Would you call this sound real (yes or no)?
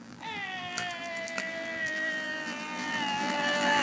no